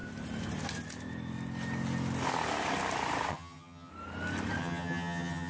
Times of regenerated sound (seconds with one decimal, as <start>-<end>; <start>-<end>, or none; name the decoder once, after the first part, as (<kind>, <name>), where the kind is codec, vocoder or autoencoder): 3.3-3.9 (vocoder, HiFi-GAN); 4.6-5.5